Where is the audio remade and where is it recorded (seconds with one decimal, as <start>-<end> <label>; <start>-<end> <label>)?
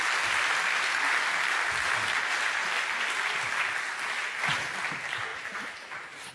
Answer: 0.0-5.3 recorded; 5.3-6.3 remade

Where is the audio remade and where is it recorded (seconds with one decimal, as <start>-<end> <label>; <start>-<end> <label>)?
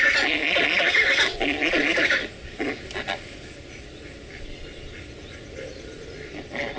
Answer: 0.0-6.8 recorded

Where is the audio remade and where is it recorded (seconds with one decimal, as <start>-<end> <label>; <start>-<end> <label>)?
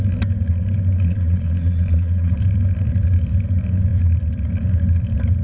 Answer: 0.0-1.0 recorded; 1.0-2.3 remade; 2.3-5.4 recorded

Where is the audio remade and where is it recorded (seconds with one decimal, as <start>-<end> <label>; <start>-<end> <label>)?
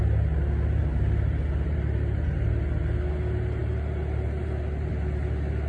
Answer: 0.0-0.8 recorded; 0.8-2.5 remade; 2.5-3.6 recorded; 3.6-4.9 remade; 4.9-5.7 recorded